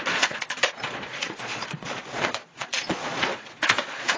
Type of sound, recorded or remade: remade